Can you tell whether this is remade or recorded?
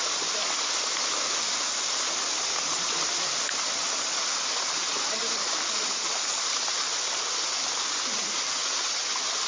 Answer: recorded